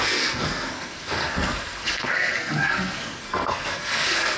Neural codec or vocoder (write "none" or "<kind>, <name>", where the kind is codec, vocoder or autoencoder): codec, SNAC